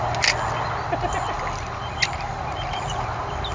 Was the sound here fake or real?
real